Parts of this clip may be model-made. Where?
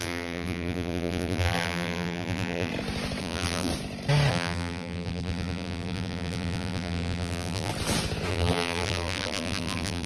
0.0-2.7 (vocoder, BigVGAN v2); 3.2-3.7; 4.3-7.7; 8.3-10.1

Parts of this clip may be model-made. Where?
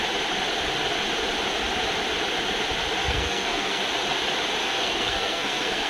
3.0-3.8 (codec, SNAC); 4.6-5.9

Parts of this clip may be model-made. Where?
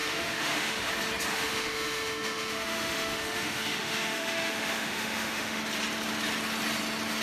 0.0-0.9 (autoencoder, DAC-VAE); 1.3-5.6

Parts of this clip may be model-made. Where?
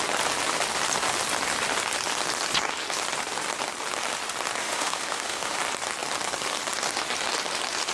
4.6-5.6 (autoencoder, DAC-VAE)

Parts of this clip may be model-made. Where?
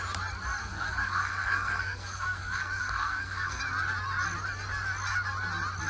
0.6-3.6 (codec, SNAC)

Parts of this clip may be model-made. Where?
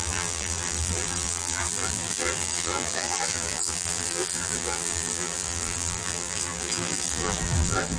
0.0-8.0 (vocoder, BigVGAN v2)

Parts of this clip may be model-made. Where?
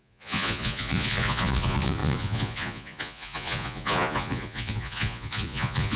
0.0-6.0 (vocoder, Vocos)